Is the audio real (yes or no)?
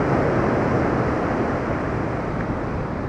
no